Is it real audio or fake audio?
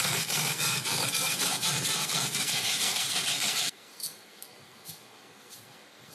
fake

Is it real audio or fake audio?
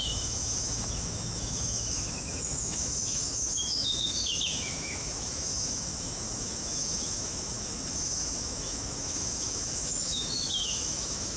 fake